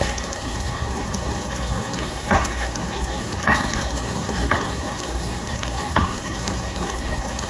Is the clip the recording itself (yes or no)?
no